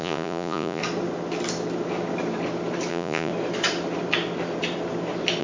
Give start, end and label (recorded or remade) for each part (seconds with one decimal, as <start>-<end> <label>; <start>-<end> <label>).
0.0-0.8 remade; 0.8-2.9 recorded; 2.9-3.3 remade; 3.3-5.4 recorded